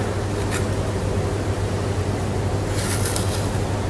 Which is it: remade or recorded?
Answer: recorded